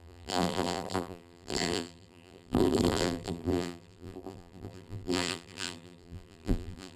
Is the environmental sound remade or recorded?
remade